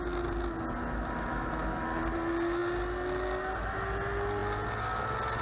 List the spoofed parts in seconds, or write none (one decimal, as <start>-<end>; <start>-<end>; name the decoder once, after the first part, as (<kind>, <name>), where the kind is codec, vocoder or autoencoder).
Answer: none